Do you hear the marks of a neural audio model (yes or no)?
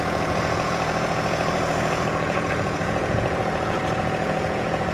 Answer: yes